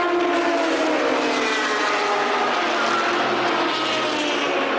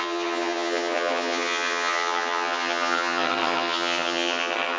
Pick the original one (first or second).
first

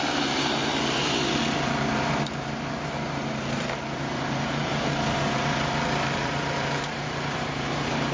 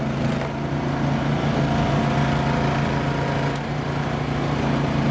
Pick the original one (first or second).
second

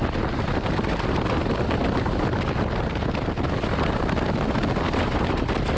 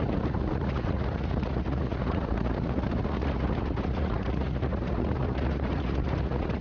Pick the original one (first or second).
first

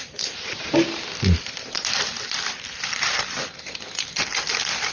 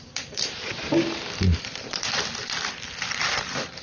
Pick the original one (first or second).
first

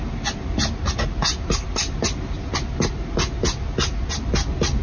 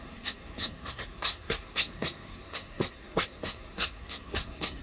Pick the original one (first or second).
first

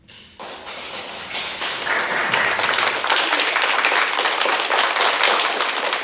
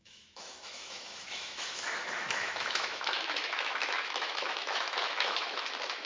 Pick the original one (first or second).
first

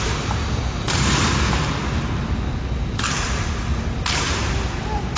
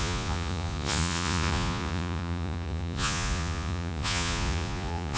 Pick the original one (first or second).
first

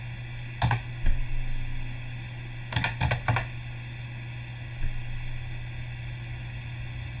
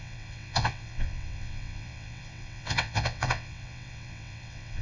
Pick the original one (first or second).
first